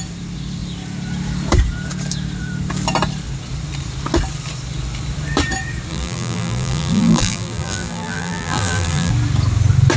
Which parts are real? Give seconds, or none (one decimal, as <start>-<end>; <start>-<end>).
0.0-5.9; 9.1-10.0